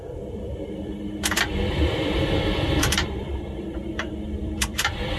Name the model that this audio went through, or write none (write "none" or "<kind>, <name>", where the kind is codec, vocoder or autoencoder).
vocoder, BigVGAN v2